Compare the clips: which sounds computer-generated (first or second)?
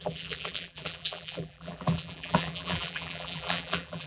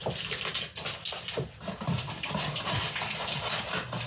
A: first